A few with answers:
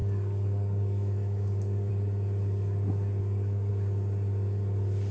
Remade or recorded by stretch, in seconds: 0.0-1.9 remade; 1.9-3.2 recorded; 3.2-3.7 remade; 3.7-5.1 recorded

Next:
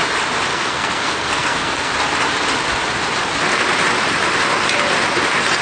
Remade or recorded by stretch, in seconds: 0.0-0.5 recorded; 0.5-1.9 remade; 1.9-5.6 recorded

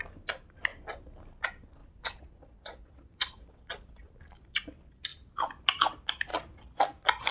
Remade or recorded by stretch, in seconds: 0.0-1.8 recorded; 1.8-4.1 remade; 4.1-7.3 recorded

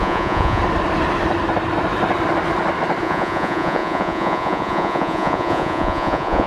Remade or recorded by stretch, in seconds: 0.0-0.6 remade; 0.6-3.0 recorded; 3.0-6.5 remade

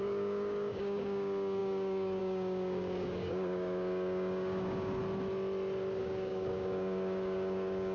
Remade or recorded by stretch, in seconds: 0.0-5.0 remade; 5.0-6.0 recorded; 6.0-7.9 remade

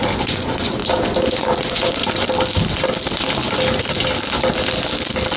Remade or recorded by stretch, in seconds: 0.0-0.8 remade; 0.8-1.3 recorded; 1.3-2.0 remade; 2.0-5.4 recorded

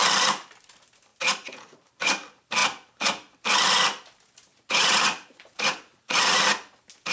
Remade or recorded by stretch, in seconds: 0.0-1.1 recorded; 1.1-1.9 remade; 1.9-4.5 recorded; 4.5-6.2 remade; 6.2-7.1 recorded